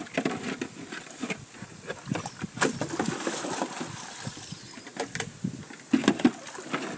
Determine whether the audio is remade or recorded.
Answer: recorded